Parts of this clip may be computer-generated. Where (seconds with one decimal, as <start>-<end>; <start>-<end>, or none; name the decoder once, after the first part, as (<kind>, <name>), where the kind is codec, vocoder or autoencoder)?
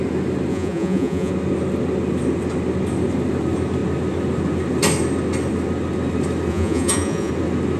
0.5-1.3 (vocoder, Vocos); 6.5-7.3